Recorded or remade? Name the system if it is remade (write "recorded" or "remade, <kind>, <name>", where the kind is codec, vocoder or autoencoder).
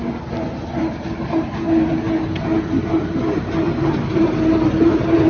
recorded